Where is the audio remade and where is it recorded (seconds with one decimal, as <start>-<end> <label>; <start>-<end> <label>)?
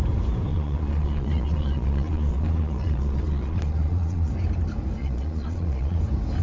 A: 0.0-0.5 recorded; 0.5-4.3 remade; 4.3-5.0 recorded; 5.0-6.0 remade; 6.0-6.4 recorded